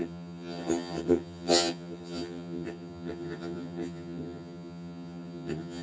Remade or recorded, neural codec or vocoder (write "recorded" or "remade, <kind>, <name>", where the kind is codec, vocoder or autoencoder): remade, vocoder, HiFi-GAN